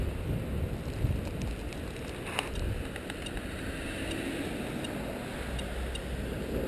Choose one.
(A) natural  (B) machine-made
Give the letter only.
A